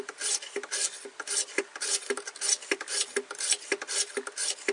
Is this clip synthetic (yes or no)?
no